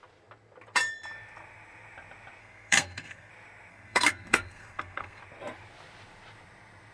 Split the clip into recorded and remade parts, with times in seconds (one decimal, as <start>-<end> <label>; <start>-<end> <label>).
0.0-2.4 recorded; 2.4-3.3 remade; 3.3-3.7 recorded; 3.7-5.2 remade; 5.2-6.9 recorded